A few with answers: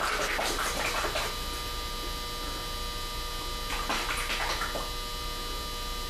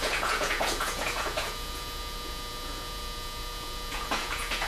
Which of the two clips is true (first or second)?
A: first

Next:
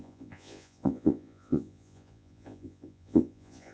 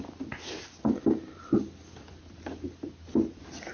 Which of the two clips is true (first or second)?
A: second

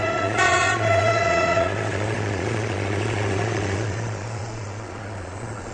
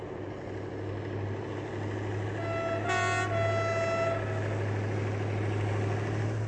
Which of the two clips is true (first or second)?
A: second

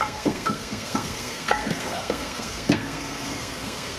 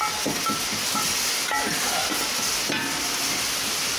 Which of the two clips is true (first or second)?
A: second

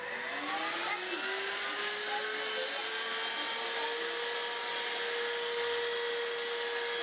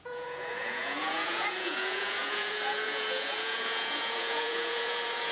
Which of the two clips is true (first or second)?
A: first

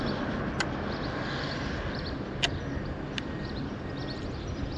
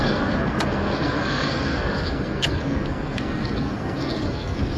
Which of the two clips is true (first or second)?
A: first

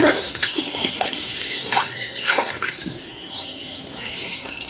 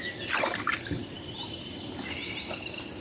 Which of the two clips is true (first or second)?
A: second